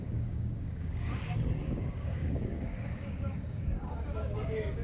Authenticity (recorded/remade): remade